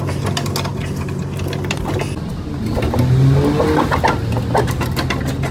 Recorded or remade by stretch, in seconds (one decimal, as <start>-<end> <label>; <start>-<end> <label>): 0.0-5.5 recorded